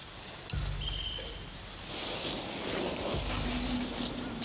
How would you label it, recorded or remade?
recorded